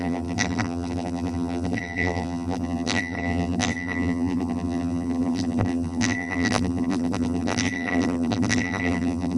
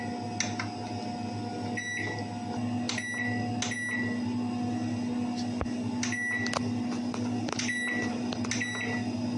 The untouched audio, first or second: second